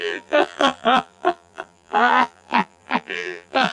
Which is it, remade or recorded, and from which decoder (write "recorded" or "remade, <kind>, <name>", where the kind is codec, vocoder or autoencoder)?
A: remade, vocoder, BigVGAN v2